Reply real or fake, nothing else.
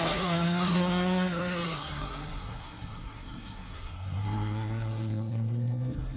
fake